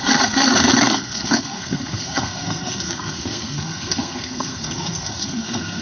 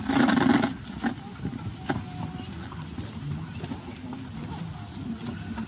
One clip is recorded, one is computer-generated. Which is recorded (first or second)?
second